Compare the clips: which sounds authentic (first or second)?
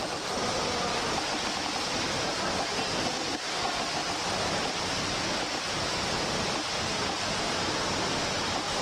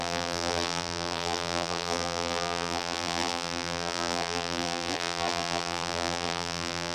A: first